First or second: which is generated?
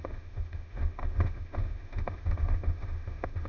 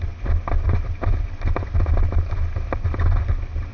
first